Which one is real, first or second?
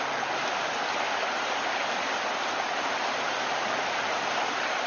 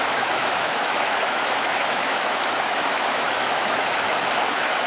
first